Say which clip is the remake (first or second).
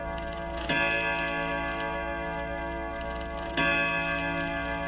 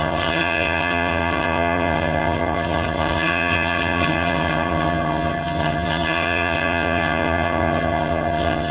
second